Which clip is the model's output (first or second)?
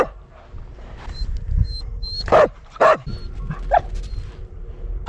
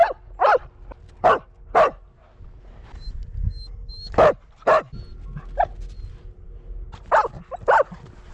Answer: first